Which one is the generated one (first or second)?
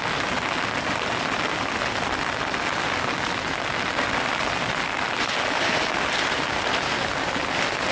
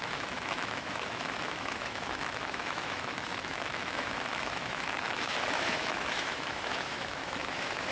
second